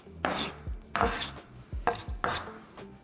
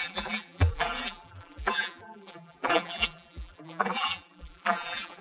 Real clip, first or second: first